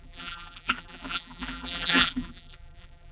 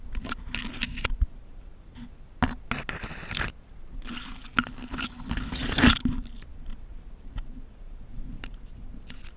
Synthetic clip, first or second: first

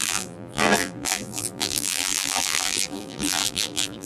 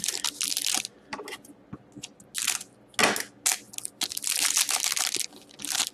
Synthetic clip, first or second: first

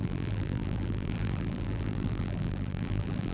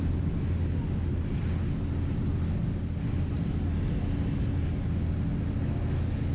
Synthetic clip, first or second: first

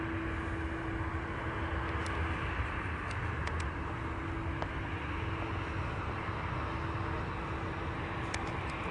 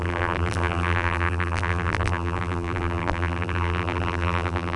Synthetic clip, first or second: second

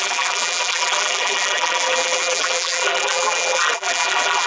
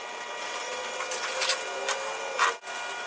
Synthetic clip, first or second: first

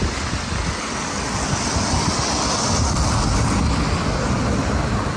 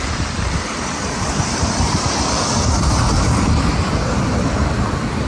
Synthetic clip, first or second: second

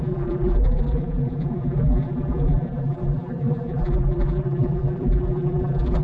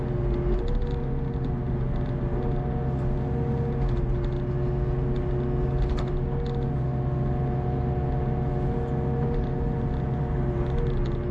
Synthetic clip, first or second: first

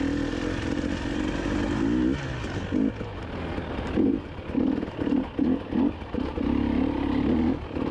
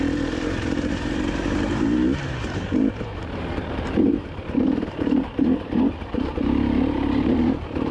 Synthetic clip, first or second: second